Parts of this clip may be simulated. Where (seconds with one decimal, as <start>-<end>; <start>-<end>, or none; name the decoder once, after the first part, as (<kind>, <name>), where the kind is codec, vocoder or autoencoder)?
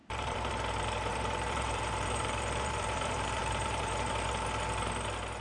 0.0-0.5 (vocoder, BigVGAN v2); 1.1-4.3